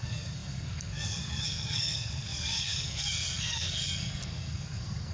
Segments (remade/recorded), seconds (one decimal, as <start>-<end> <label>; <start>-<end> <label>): 0.0-5.1 remade